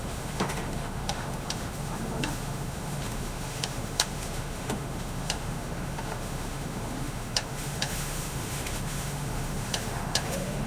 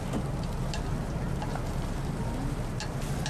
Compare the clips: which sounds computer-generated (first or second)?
first